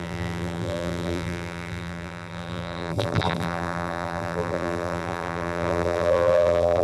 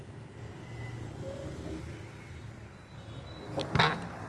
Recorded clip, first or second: second